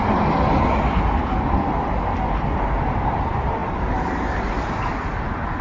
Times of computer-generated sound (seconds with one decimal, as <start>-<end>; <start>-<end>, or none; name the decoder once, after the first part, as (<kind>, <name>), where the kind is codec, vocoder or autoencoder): none